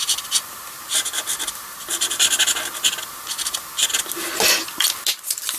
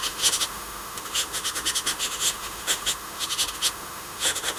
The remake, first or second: second